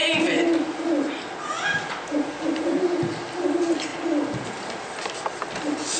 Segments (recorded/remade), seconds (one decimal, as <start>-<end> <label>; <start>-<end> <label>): 0.0-6.0 recorded